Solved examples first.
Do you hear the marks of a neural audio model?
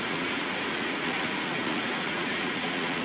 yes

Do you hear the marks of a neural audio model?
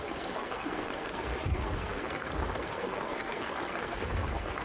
yes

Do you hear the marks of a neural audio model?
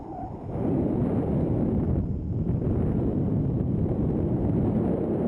no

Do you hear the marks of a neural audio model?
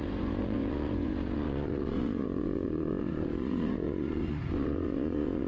yes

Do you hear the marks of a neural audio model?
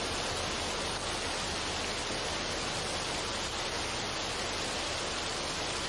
no